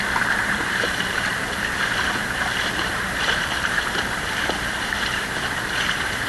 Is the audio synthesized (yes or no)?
yes